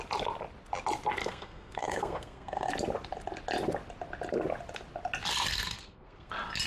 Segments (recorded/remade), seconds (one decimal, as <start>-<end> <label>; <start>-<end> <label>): 0.0-1.2 recorded; 1.2-2.7 remade; 2.7-5.5 recorded; 5.5-6.3 remade; 6.3-6.7 recorded